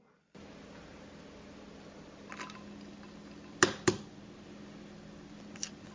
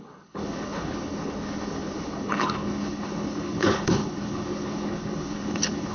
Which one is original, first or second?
first